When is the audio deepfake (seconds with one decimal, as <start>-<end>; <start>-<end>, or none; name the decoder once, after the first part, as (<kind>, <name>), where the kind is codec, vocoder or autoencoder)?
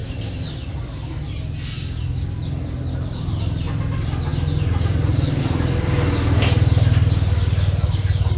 none